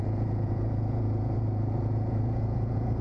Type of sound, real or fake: fake